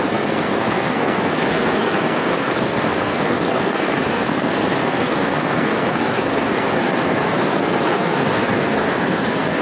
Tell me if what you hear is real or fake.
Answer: fake